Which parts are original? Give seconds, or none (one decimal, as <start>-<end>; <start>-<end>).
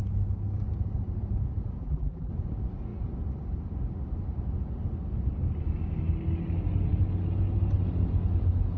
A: 0.0-1.8; 2.3-8.8